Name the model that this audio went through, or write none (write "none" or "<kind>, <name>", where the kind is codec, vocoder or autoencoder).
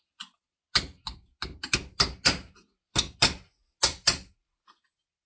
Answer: none